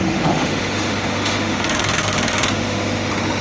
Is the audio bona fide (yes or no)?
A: no